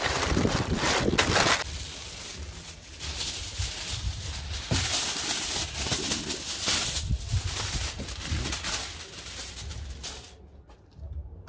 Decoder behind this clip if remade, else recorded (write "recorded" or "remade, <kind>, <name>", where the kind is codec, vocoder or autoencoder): recorded